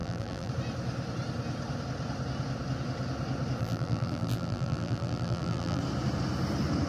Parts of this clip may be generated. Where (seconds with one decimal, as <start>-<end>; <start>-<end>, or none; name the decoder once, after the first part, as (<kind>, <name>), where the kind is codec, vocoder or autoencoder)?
0.0-0.5 (vocoder, BigVGAN v2); 3.6-5.8